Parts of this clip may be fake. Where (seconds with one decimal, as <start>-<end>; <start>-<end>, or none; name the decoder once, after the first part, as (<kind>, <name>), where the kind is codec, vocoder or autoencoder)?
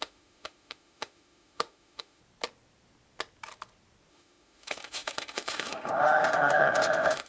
0.0-2.2 (autoencoder, DAC-VAE); 4.1-7.3